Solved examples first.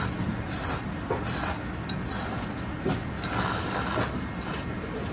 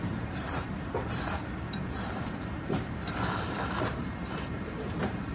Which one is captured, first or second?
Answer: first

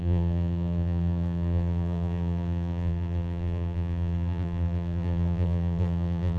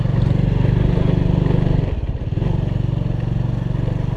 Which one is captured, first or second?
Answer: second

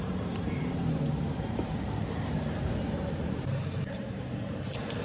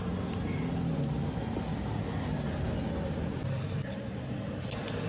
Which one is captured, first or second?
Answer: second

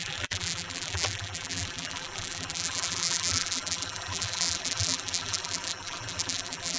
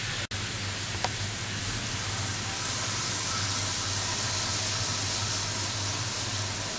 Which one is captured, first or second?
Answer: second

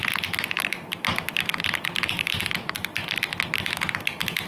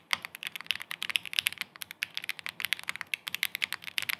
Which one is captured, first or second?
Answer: second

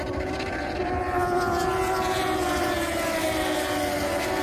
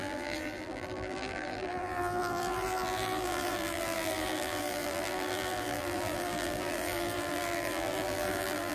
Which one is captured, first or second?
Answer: first